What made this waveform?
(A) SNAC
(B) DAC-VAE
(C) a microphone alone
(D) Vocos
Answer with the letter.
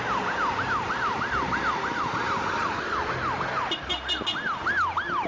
C